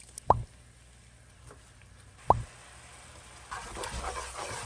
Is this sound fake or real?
real